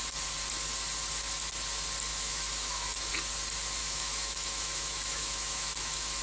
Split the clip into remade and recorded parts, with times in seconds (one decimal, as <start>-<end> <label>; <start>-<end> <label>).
0.0-2.1 recorded; 2.1-3.1 remade; 3.1-3.8 recorded; 3.8-6.2 remade